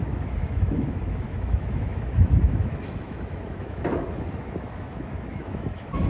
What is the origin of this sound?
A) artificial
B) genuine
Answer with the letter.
A